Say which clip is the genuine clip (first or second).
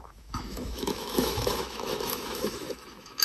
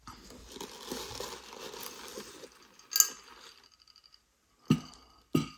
second